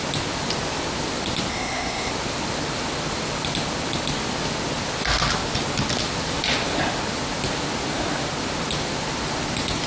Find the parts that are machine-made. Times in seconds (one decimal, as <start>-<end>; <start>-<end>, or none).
1.5-2.1